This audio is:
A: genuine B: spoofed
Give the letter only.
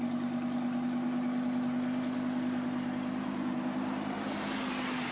A